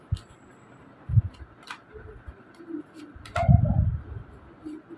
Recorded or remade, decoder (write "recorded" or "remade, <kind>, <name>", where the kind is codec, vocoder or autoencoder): recorded